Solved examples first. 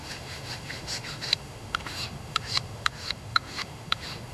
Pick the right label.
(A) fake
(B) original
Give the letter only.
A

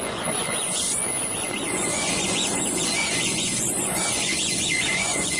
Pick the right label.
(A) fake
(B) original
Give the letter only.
A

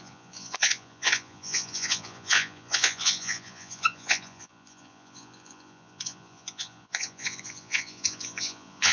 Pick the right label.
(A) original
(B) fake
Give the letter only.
B